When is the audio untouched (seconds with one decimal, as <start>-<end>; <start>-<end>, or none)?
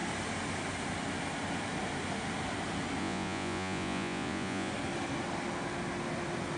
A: 0.0-3.0; 4.7-6.6